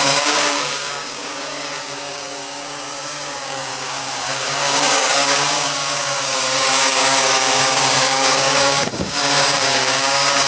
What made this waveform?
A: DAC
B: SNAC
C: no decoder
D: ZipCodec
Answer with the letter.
A